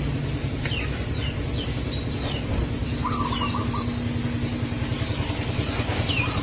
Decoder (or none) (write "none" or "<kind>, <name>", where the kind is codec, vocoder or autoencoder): none